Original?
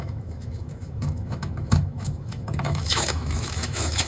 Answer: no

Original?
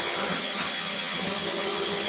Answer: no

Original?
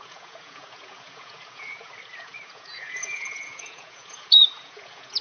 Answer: no